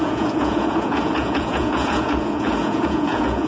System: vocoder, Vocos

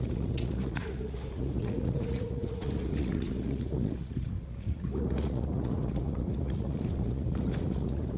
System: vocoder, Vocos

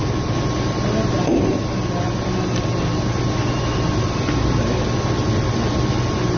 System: none